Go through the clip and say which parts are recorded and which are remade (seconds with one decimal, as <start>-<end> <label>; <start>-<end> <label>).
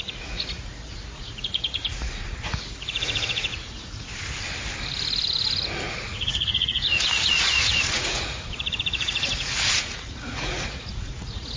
0.0-4.1 remade; 4.1-5.9 recorded; 5.9-11.6 remade